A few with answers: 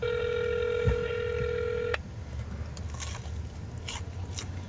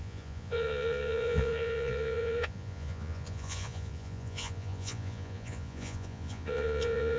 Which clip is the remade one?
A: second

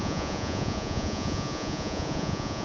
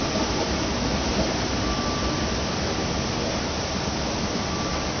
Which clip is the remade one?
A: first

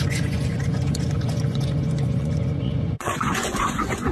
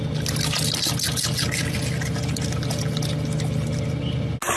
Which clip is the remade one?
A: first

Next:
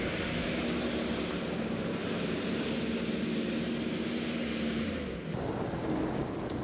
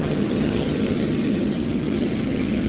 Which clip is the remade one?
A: second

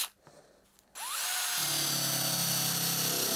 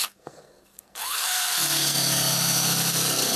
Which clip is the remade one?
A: second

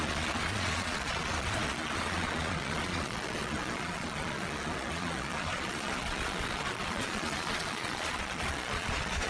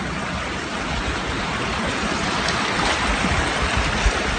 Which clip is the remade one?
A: first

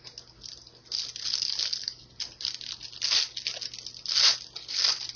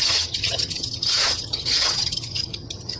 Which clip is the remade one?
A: second